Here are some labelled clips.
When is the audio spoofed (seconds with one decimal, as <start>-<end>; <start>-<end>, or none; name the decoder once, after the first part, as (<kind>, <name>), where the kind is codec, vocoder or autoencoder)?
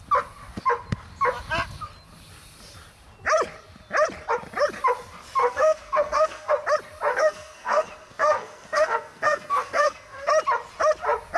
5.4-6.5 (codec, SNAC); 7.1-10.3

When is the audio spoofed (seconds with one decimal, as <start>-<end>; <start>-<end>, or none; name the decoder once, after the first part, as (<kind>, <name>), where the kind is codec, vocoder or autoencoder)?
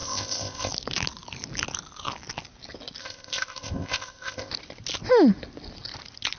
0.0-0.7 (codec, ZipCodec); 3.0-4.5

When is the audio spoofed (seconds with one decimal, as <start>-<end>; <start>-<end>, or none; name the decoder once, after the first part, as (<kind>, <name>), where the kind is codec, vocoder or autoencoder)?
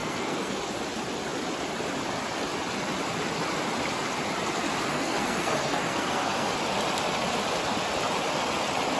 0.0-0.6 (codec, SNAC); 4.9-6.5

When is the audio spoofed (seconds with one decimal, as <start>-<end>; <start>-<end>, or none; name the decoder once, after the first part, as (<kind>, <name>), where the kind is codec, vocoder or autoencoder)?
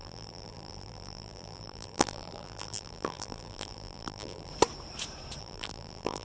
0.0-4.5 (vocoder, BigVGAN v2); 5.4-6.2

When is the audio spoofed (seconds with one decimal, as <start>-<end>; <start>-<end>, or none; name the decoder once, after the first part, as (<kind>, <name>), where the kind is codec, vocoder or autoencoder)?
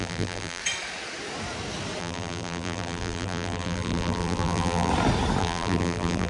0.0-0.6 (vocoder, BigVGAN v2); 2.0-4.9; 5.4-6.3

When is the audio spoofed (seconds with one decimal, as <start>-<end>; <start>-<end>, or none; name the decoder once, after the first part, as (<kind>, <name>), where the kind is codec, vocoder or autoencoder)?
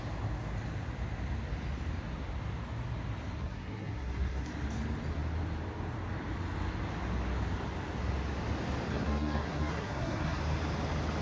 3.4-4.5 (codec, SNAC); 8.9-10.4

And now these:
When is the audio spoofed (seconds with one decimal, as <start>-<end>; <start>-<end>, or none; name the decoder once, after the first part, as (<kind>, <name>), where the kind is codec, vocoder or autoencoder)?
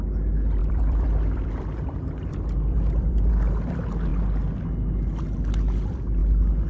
0.6-3.3 (vocoder, BigVGAN v2)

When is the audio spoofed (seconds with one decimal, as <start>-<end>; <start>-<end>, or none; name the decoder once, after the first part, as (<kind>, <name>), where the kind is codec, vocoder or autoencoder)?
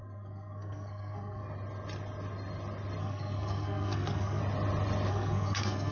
0.0-1.4 (codec, SNAC); 3.0-4.4; 5.1-5.9